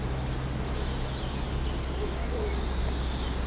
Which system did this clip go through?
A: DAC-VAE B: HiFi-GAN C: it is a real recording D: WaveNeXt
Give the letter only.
C